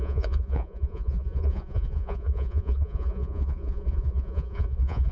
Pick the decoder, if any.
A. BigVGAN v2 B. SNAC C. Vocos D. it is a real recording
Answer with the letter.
C